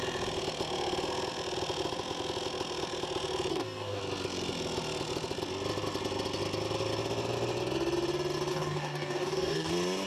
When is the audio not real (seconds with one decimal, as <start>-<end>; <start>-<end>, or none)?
3.5-4.0; 8.5-9.7